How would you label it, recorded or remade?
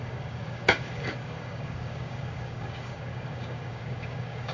remade